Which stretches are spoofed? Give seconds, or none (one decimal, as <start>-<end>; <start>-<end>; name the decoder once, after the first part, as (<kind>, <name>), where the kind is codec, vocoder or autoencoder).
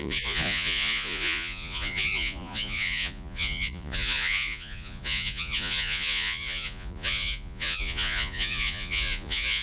0.0-9.6 (vocoder, Vocos)